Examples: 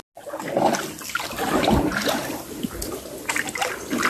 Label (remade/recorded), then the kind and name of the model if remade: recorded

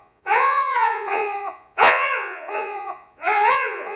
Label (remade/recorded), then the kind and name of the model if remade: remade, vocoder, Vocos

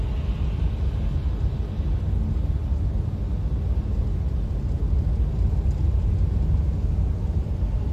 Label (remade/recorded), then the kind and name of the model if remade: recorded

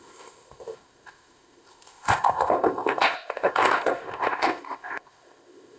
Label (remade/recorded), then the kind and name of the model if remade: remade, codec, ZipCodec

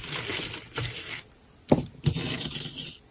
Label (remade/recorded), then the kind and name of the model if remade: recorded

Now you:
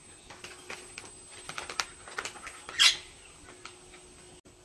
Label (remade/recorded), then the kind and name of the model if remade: recorded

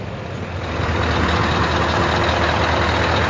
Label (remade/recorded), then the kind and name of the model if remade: recorded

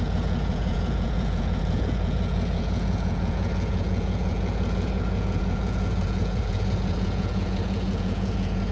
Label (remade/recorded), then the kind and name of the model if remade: remade, vocoder, Vocos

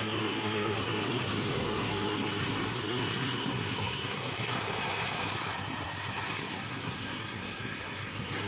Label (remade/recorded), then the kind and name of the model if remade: remade, codec, SNAC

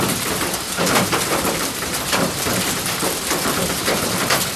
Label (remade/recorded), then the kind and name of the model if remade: remade, vocoder, BigVGAN v2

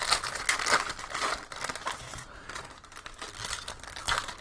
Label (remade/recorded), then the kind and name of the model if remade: recorded